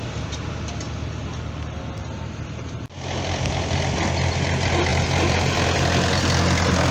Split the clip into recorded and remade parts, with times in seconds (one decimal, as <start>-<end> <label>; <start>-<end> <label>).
0.0-6.9 recorded